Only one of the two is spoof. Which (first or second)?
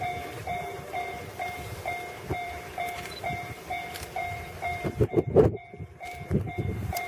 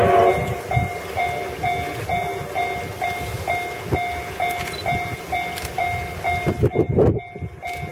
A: first